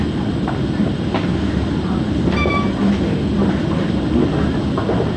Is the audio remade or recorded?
recorded